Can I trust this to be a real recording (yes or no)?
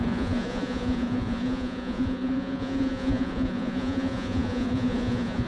no